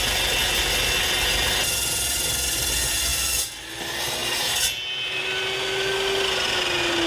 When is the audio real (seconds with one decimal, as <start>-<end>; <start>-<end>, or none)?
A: 0.0-7.1